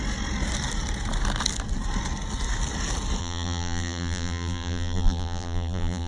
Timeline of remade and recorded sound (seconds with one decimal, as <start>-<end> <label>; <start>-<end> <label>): 0.0-3.2 recorded; 3.2-6.1 remade